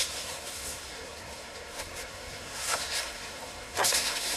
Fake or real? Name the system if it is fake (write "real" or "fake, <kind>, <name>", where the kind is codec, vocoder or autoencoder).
fake, codec, SNAC